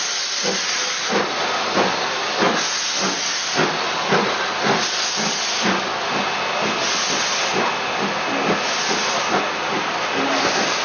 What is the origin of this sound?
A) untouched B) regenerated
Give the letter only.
A